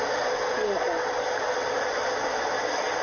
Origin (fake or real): real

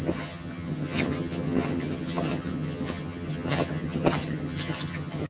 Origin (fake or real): fake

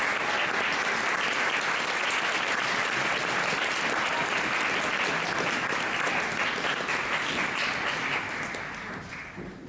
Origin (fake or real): real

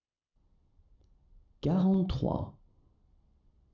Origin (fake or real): real